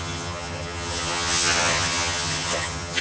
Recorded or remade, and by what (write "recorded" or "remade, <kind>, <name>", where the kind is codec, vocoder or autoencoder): remade, vocoder, HiFi-GAN